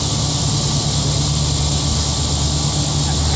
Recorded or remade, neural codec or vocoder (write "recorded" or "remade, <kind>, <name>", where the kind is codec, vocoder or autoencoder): recorded